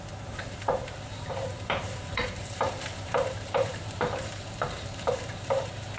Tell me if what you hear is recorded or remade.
remade